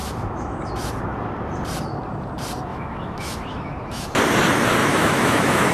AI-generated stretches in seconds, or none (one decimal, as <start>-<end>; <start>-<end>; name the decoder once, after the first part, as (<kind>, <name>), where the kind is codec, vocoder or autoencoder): 0.0-0.7 (autoencoder, DAC-VAE); 2.7-4.2; 4.8-5.7